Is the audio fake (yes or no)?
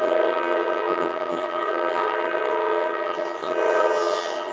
yes